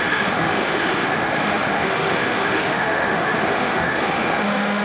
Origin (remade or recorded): remade